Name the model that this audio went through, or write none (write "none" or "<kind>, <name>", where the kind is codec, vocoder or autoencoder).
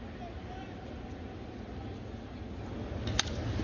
none